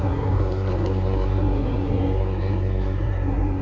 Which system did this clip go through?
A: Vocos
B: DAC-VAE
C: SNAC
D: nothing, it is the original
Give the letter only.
C